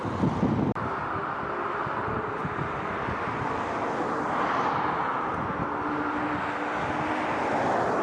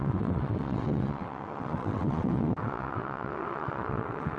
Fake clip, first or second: second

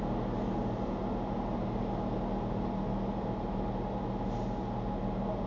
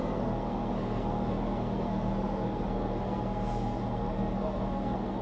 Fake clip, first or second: second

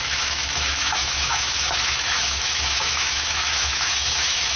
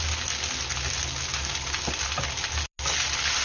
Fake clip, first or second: first